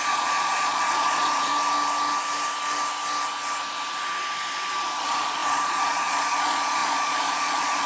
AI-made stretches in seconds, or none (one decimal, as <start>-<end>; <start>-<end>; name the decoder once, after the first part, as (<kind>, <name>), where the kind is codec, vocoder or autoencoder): 0.0-1.5 (vocoder, Vocos); 5.0-7.9